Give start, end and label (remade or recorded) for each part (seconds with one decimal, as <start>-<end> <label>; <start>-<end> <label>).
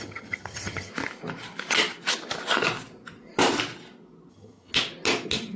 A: 0.0-0.9 remade; 0.9-4.3 recorded; 4.3-4.7 remade; 4.7-5.6 recorded